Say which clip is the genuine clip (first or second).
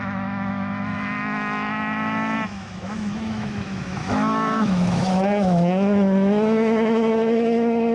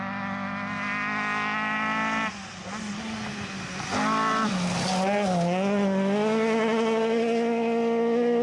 second